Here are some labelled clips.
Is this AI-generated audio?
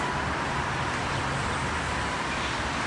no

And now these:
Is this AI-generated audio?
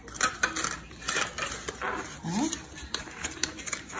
no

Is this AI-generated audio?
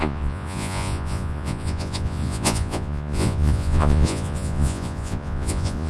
yes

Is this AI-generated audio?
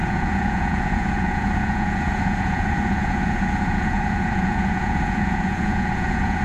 yes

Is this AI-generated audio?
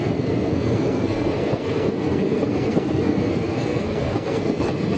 yes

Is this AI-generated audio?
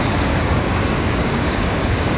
yes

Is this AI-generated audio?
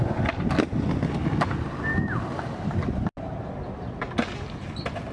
no